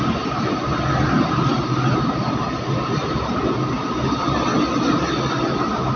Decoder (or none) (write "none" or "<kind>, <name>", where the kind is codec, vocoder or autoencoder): none